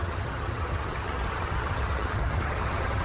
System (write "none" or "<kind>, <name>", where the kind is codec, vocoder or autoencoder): vocoder, HiFi-GAN